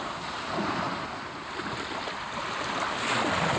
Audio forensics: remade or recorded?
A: recorded